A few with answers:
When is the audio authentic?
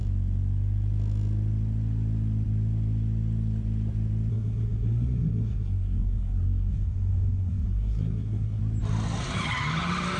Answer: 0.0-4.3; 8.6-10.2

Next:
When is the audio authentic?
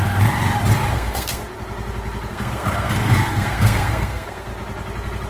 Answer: 0.0-0.9; 1.4-2.3; 4.5-5.3